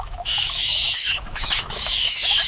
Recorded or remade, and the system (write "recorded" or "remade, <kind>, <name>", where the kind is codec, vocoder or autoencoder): remade, autoencoder, DAC-VAE